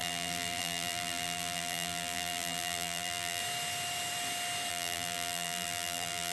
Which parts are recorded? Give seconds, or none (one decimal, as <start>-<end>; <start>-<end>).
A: 3.4-4.7